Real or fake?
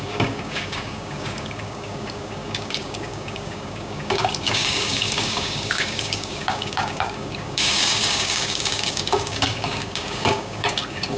fake